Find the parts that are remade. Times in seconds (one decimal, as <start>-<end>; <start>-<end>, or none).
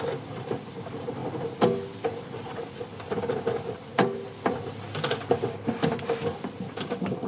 none